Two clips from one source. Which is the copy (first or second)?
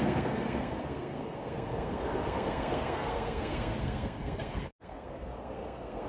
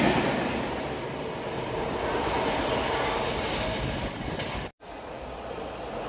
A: first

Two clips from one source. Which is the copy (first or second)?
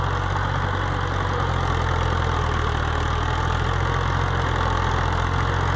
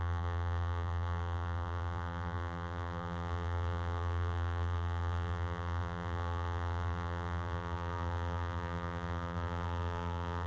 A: second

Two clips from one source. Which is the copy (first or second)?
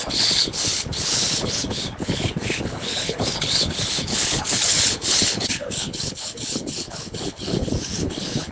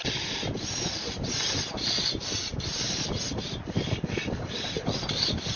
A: first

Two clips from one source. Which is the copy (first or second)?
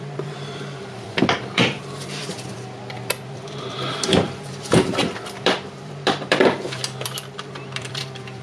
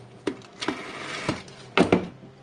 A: first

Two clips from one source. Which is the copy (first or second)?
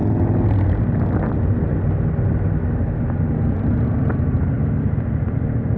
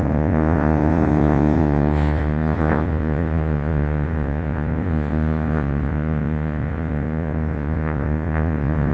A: second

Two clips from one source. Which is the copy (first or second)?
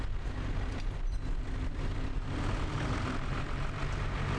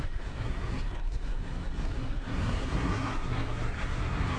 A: second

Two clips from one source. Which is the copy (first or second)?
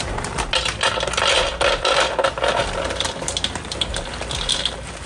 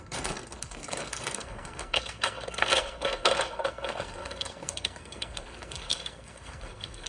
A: second